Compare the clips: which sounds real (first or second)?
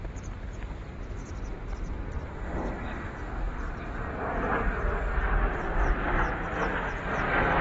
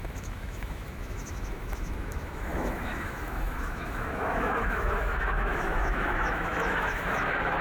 first